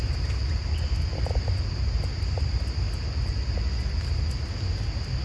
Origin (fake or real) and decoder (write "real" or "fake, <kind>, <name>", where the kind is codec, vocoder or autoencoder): real